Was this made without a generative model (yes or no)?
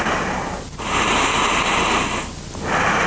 yes